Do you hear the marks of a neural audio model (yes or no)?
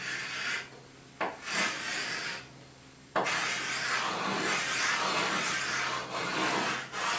no